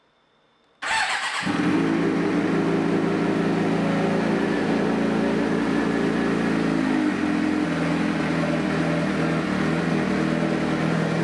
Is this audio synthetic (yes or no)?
no